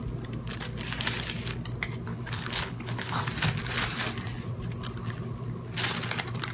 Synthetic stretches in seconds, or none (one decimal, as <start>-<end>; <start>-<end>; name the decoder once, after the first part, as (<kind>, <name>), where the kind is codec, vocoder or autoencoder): 2.1-3.2 (codec, HILCodec)